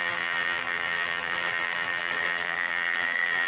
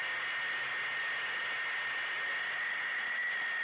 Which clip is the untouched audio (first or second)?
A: second